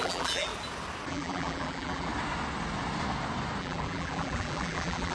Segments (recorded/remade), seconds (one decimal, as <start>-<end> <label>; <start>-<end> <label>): 0.0-0.5 remade; 0.5-1.1 recorded; 1.1-2.1 remade; 2.1-3.6 recorded; 3.6-5.1 remade

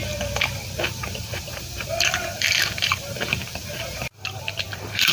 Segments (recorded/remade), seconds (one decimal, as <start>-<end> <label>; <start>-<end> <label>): 0.0-0.8 recorded; 0.8-5.1 remade

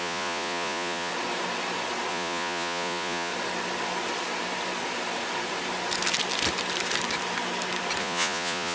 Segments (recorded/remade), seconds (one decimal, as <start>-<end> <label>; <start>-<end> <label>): 0.0-1.1 remade; 1.1-2.1 recorded; 2.1-3.3 remade; 3.3-8.0 recorded; 8.0-8.7 remade

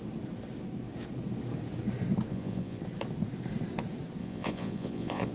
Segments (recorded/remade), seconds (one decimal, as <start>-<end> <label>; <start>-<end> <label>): 0.0-2.3 recorded; 2.3-2.8 remade; 2.8-4.2 recorded; 4.2-5.3 remade

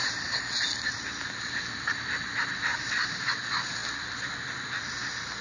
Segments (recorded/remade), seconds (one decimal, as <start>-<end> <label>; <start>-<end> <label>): 0.0-0.6 remade; 0.6-2.7 recorded; 2.7-3.3 remade; 3.3-5.4 recorded

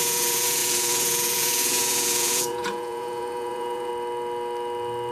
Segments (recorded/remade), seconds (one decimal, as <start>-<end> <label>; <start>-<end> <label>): 0.0-3.9 remade; 3.9-5.1 recorded